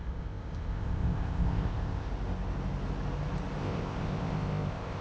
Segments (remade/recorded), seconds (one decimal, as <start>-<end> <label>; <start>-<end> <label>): 0.0-2.1 remade; 2.1-3.6 recorded; 3.6-5.0 remade